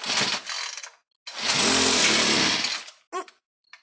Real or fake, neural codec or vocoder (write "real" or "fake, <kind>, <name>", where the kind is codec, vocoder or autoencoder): real